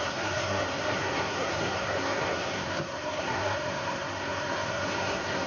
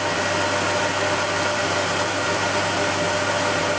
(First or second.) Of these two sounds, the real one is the second